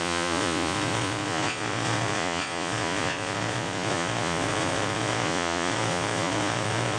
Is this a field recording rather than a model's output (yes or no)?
no